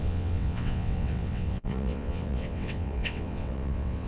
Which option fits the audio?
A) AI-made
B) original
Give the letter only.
A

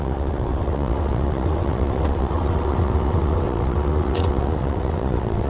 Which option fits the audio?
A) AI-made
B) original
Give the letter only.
A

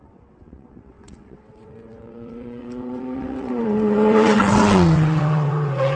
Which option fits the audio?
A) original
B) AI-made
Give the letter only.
B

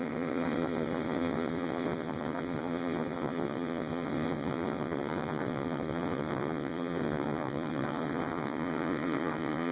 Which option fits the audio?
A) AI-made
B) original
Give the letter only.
A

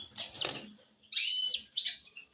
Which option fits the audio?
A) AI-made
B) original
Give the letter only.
B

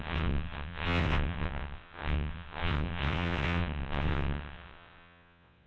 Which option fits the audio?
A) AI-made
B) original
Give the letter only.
A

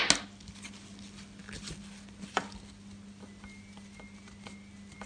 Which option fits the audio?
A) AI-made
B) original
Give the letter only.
B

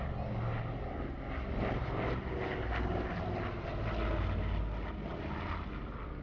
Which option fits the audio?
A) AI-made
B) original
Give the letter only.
B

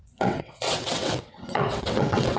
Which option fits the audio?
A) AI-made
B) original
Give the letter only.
A